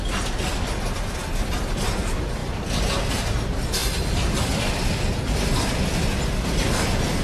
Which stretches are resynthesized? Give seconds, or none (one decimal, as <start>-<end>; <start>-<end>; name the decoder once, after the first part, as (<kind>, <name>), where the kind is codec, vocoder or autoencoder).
none